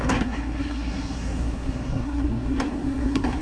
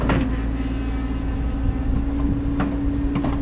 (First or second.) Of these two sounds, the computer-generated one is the first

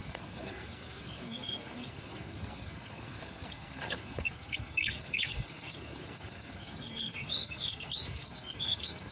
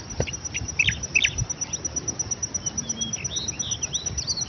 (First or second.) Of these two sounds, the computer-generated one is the first